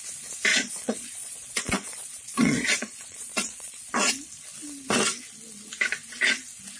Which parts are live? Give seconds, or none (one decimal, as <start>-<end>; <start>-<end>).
0.0-0.5; 4.1-6.8